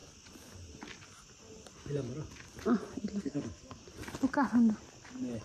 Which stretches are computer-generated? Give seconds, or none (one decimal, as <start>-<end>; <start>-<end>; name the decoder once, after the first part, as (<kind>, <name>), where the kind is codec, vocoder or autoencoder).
3.2-3.8 (codec, SNAC)